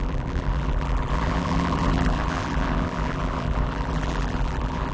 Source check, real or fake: fake